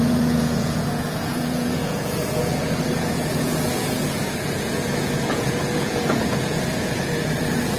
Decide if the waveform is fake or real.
fake